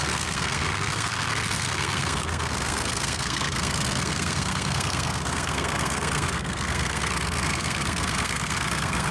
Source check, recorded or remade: remade